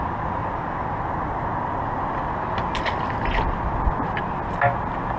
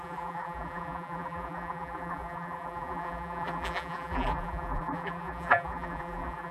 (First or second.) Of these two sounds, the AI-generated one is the second